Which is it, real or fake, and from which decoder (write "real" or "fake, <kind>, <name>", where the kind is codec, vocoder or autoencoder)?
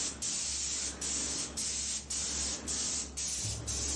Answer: real